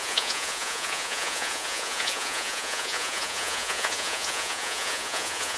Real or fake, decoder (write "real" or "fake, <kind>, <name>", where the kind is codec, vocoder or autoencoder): fake, vocoder, Vocos